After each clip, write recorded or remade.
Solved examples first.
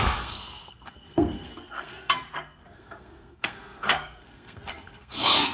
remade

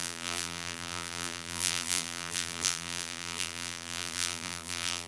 remade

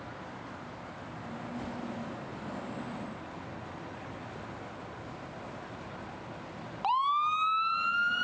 recorded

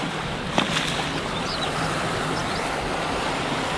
recorded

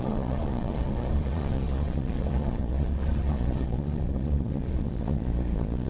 remade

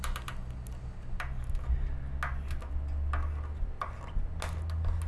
recorded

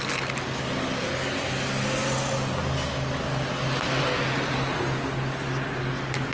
recorded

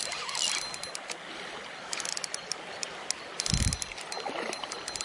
recorded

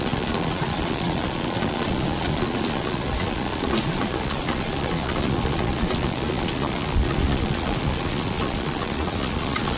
remade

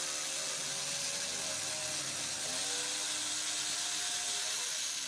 recorded